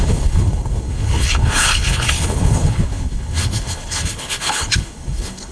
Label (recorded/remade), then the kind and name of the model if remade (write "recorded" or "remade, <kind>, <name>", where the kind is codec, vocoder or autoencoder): remade, codec, HILCodec